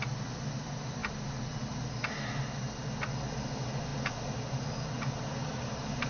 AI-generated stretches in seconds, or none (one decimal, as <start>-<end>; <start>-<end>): none